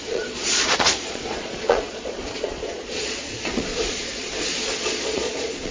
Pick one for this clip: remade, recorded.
remade